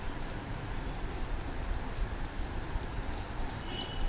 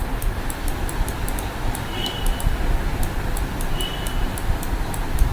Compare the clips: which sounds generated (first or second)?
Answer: first